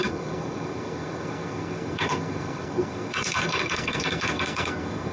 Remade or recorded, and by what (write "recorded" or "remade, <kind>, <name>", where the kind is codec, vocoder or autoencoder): remade, codec, SNAC